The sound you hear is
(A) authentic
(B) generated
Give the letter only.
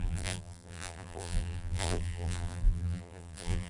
B